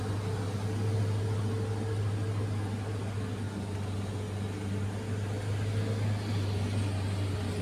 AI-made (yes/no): no